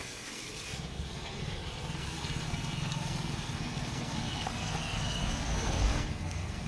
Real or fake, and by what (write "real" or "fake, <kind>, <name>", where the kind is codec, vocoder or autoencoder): fake, codec, SNAC